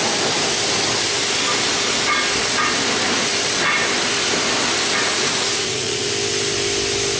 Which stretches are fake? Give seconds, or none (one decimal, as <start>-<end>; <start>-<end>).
5.0-6.1